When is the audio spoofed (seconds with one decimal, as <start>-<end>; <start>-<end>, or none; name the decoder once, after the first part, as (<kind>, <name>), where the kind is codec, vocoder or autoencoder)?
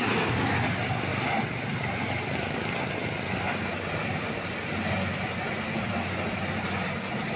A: 0.0-0.5 (codec, DAC)